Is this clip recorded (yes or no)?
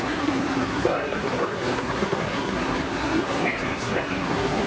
no